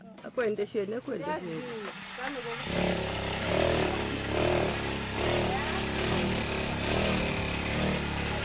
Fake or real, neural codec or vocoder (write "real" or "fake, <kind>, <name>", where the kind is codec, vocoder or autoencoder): real